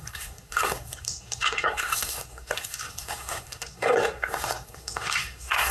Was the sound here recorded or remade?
remade